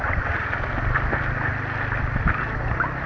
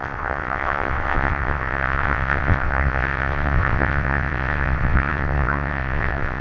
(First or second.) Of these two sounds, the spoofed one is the second